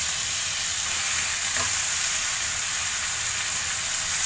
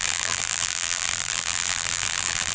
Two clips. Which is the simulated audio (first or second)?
second